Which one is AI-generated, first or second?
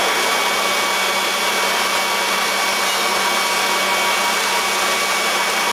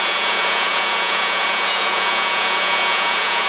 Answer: second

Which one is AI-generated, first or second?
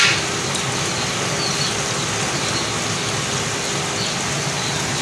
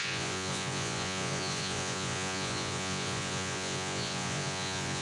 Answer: second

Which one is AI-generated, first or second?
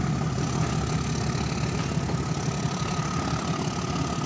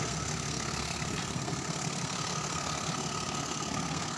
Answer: second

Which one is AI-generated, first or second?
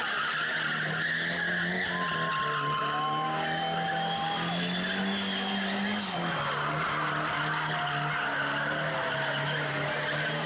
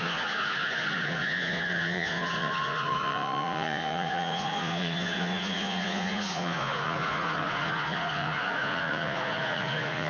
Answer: second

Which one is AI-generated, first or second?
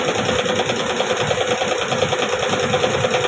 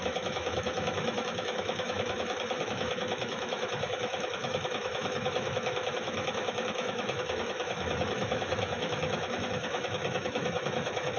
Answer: second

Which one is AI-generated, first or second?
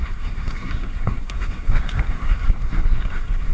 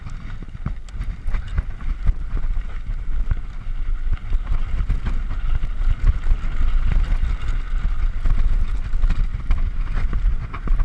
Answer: first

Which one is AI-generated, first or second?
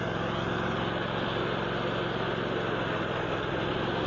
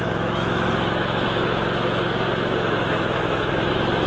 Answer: second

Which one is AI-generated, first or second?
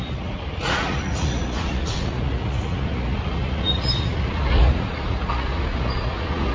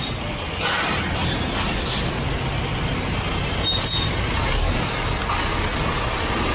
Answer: first